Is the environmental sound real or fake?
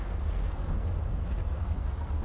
fake